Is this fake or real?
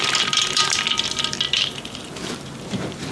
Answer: fake